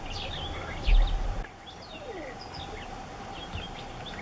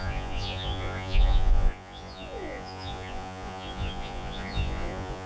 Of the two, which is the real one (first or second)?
first